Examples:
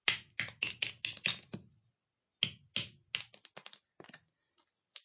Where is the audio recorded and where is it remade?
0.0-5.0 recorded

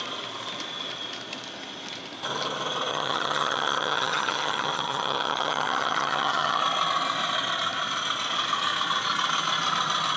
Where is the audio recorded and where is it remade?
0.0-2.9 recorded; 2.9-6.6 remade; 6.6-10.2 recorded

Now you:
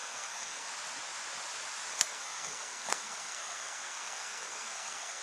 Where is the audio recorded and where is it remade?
0.0-0.7 remade; 0.7-1.9 recorded; 1.9-5.2 remade